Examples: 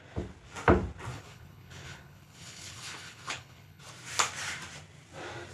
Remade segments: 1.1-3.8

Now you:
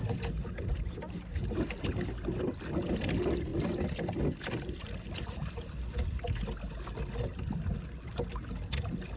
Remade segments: none

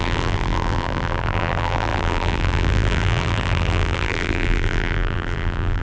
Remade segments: 0.0-5.8

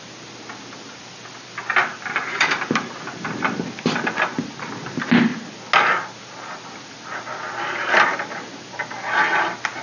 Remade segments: none

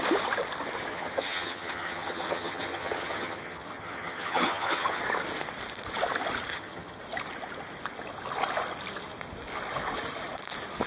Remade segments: 0.9-5.0; 6.5-7.0

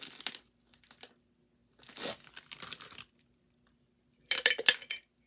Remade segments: none

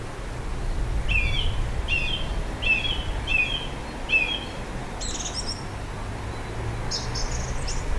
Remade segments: none

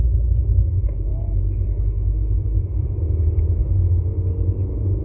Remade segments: none